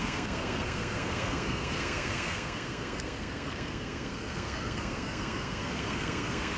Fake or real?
fake